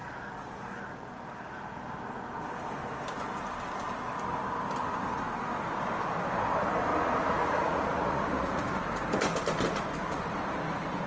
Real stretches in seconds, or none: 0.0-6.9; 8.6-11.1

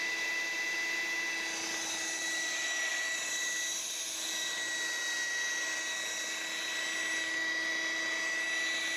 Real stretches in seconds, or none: 0.0-9.0

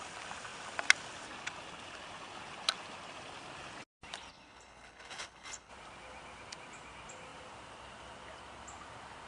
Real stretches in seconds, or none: 0.0-4.3; 5.7-9.3

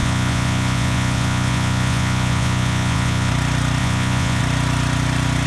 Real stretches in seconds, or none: 3.3-3.8; 4.4-5.5

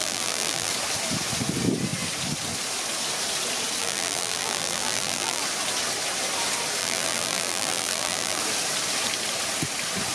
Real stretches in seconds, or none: 0.7-3.8; 5.4-6.8; 8.4-10.1

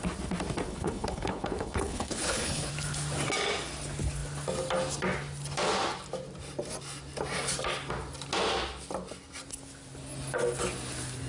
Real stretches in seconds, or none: 0.0-0.7; 2.7-11.3

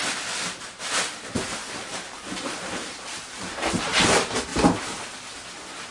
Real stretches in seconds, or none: 0.0-1.6; 3.9-4.5; 5.1-5.9